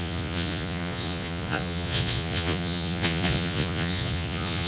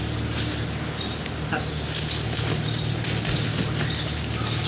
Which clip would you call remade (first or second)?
first